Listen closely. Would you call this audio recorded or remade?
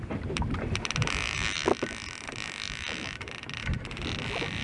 recorded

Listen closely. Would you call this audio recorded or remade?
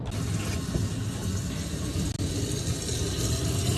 recorded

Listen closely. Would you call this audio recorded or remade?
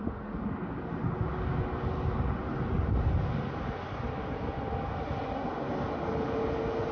recorded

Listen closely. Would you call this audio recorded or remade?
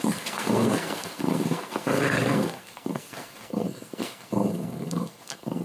remade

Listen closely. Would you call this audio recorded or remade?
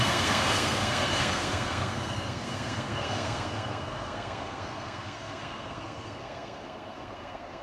remade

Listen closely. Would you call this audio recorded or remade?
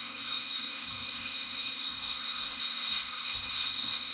remade